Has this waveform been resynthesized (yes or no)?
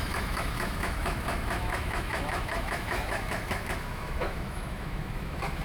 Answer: yes